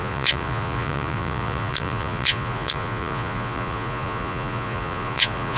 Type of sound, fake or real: fake